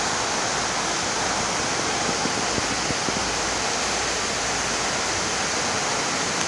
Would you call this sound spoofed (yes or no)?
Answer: no